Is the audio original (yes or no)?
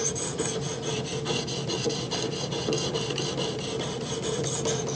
yes